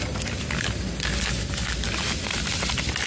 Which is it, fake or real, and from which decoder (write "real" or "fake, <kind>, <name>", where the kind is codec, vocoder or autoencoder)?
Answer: real